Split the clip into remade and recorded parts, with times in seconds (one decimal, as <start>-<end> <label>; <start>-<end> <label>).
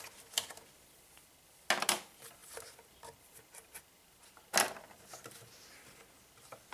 0.0-6.7 recorded